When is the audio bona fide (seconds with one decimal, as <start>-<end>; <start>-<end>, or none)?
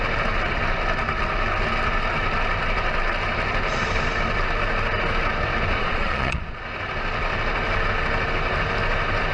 0.0-5.8; 6.6-9.3